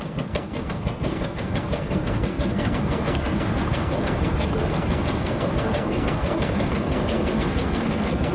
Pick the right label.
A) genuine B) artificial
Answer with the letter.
B